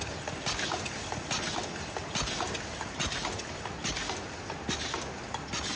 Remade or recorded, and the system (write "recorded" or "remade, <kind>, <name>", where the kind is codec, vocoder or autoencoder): recorded